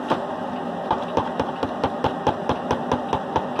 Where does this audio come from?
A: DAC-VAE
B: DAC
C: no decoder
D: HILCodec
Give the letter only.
C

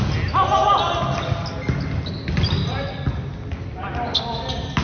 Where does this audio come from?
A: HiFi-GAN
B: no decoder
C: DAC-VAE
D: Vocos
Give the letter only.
B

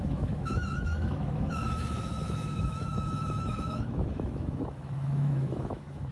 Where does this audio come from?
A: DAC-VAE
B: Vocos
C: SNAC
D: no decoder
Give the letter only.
A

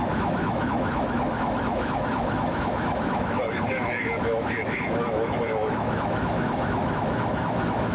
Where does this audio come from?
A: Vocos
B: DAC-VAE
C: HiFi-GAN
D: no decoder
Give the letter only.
B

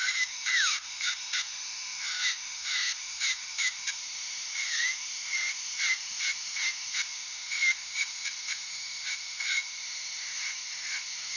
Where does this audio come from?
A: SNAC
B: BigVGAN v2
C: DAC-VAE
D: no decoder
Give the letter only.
C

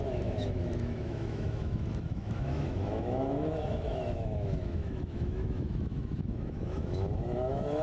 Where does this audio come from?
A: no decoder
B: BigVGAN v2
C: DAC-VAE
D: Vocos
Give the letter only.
C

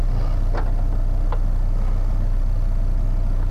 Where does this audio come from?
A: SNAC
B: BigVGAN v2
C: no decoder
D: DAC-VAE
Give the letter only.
C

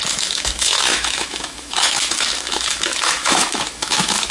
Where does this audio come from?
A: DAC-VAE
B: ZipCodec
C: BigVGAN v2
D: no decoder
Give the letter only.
A